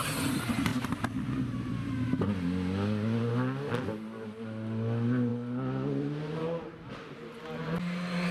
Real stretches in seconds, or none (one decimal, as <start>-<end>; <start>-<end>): 0.0-8.3